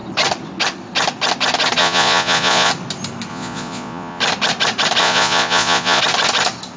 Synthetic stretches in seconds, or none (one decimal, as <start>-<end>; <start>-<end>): 1.8-2.7; 3.3-4.2; 5.0-6.0

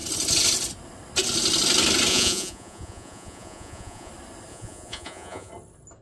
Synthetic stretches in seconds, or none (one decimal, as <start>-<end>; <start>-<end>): 2.1-4.1; 4.5-5.5